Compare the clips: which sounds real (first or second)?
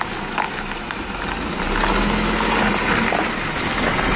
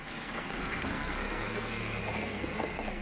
first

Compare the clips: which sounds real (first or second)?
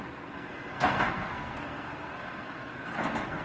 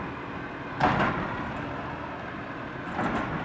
second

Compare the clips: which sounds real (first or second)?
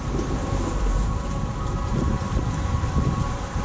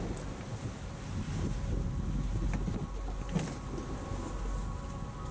second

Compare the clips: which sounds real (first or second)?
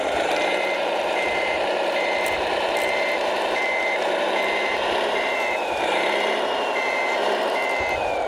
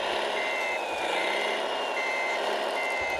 second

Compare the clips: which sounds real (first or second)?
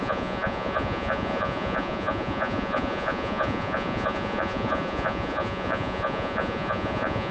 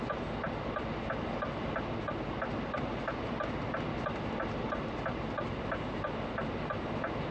second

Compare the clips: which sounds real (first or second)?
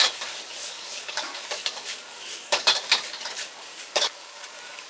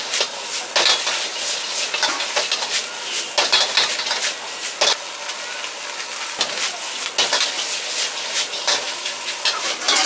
second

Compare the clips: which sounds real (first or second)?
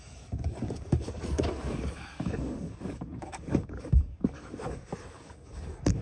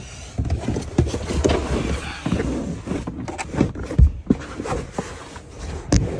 second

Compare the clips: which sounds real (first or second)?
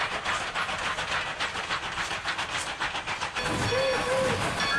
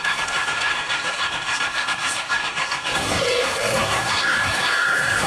first